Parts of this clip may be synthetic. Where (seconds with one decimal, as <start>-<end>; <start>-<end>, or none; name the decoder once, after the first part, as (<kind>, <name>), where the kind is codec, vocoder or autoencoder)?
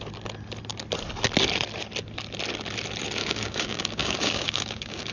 3.2-5.1 (codec, DAC)